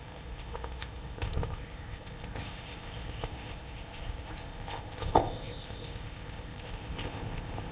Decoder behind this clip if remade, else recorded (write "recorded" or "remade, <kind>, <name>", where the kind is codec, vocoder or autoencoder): remade, codec, ZipCodec